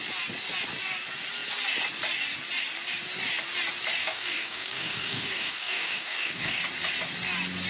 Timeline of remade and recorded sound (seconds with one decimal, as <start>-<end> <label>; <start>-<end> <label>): 0.0-4.0 recorded; 4.0-6.6 remade; 6.6-7.7 recorded